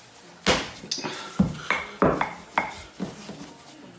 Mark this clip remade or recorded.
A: recorded